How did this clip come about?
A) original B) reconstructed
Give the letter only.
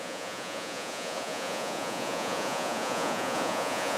B